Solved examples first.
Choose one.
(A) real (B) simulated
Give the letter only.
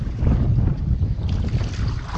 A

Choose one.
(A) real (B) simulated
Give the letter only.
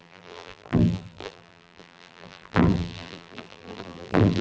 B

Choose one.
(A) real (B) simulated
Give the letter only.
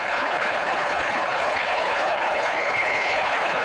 B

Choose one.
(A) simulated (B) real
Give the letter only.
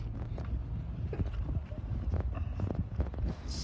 B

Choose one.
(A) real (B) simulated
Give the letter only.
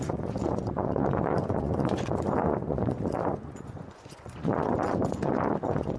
B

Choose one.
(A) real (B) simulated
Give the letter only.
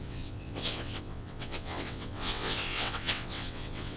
B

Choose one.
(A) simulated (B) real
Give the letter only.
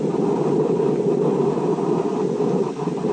B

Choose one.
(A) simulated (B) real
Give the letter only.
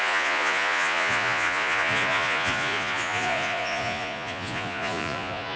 A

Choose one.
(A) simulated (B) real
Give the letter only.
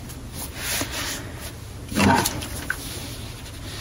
B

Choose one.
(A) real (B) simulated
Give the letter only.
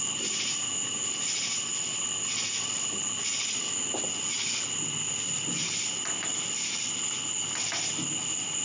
A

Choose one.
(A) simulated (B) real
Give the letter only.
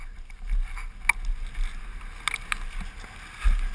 B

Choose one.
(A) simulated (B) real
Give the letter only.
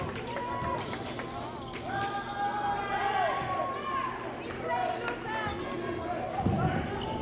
B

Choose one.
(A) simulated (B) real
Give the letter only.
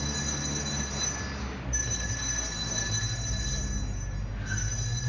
B